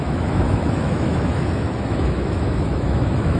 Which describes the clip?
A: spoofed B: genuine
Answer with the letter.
A